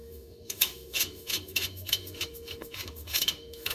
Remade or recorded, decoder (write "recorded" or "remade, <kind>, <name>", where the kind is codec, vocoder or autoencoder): remade, autoencoder, DAC-VAE